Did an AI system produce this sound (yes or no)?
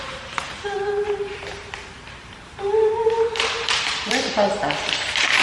yes